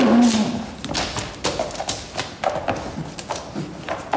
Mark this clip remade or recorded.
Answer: recorded